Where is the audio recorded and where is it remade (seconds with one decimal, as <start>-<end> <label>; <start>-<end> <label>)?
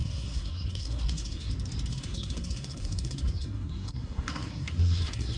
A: 0.0-1.5 remade; 1.5-1.9 recorded; 1.9-5.4 remade